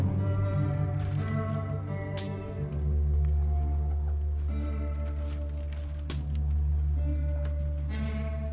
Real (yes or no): yes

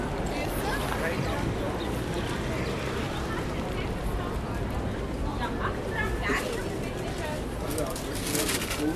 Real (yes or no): yes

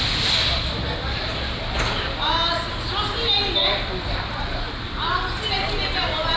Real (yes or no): yes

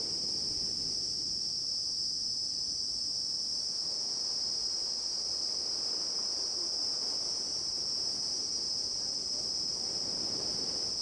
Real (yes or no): yes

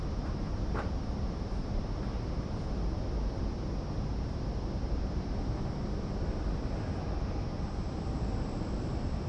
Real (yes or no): yes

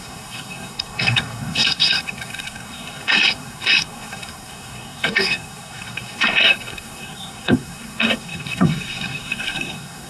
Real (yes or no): no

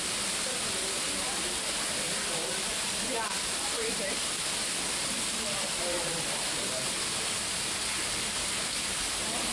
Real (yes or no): yes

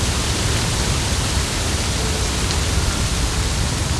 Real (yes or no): yes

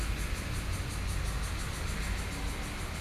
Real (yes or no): yes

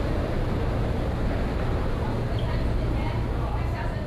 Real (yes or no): yes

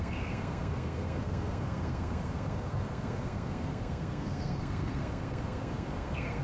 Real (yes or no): no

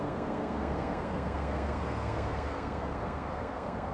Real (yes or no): no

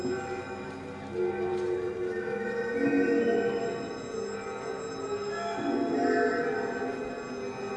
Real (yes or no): yes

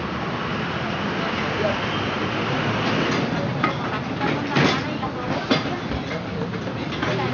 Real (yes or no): yes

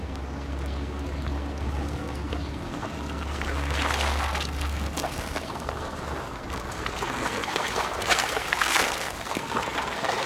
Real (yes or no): no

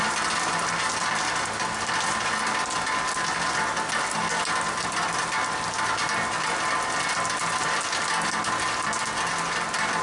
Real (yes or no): yes